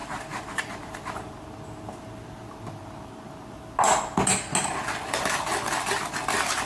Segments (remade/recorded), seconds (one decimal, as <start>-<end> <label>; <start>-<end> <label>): 0.0-0.6 remade; 0.6-6.7 recorded